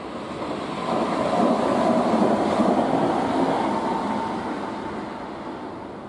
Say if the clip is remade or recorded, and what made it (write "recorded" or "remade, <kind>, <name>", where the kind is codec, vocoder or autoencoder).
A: recorded